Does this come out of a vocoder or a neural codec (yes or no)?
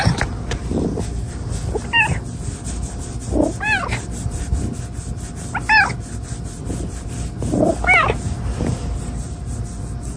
no